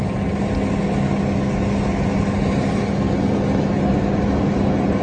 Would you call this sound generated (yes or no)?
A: no